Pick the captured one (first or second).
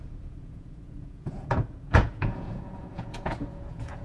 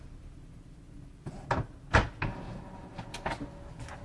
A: second